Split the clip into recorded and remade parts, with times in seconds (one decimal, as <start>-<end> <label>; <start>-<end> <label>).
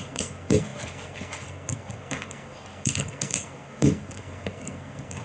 0.0-5.2 remade